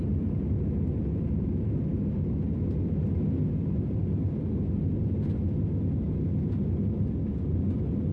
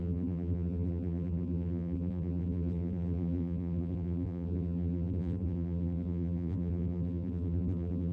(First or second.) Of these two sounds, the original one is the first